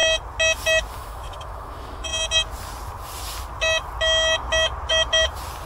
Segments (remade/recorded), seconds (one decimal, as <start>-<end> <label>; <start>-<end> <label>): 0.0-0.9 recorded; 0.9-2.1 remade; 2.1-5.7 recorded